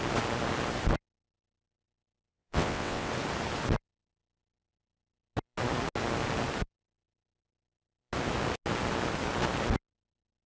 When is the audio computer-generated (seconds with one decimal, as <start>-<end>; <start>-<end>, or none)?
2.3-3.1